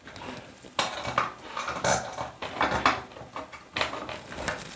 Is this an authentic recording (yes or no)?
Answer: yes